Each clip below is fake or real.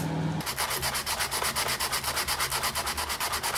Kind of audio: real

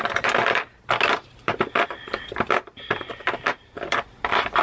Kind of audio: real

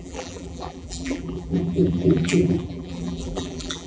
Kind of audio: fake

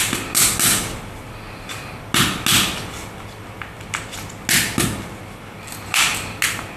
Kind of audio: real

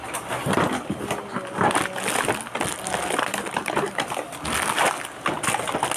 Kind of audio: real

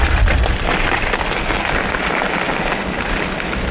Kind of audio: real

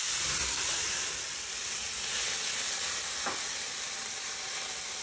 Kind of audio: real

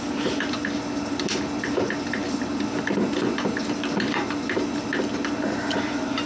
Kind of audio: real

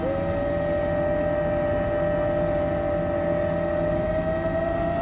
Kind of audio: real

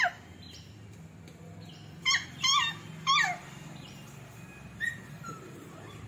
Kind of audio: real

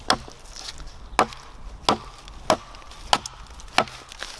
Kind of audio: real